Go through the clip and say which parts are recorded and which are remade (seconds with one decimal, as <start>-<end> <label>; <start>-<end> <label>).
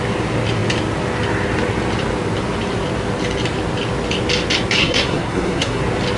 0.0-4.8 recorded; 4.8-5.8 remade; 5.8-6.2 recorded